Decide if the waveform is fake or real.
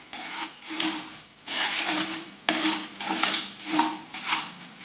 real